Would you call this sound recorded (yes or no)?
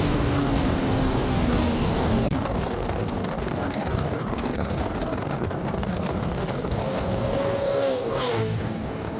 no